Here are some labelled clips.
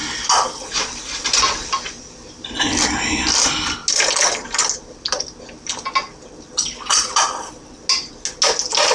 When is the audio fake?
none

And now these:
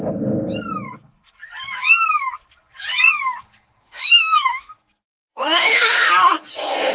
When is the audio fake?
3.8-4.7; 5.3-6.1

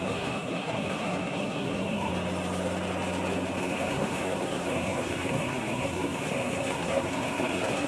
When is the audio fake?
0.0-2.1; 3.6-7.9

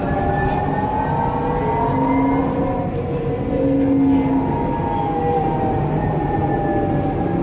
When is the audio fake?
2.4-3.6; 5.2-6.4